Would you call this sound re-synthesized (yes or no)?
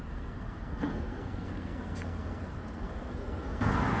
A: yes